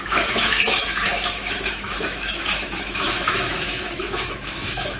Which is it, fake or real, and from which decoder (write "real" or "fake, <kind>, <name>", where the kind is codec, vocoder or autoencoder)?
fake, autoencoder, DAC-VAE